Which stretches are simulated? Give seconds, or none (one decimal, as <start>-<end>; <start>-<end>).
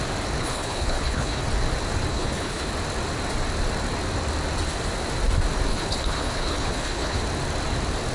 0.4-1.4; 2.1-2.7; 5.7-7.2